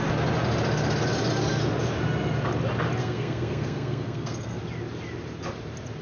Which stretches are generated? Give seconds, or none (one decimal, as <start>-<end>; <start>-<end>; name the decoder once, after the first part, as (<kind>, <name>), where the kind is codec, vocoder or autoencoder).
3.0-4.6 (codec, SNAC)